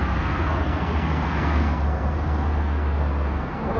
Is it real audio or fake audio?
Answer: fake